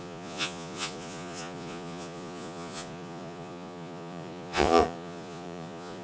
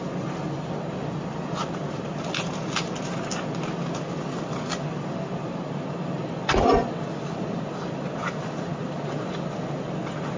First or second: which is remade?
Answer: first